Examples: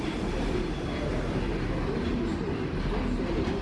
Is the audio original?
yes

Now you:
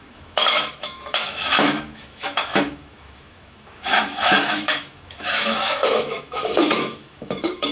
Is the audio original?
no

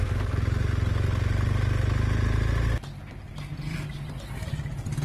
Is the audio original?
yes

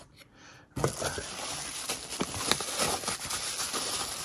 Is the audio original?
yes